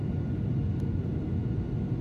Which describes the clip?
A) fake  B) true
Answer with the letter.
B